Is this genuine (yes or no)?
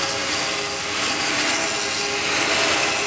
yes